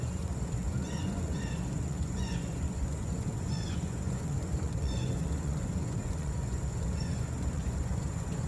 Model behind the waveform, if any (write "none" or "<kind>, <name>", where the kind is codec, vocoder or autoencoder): vocoder, Vocos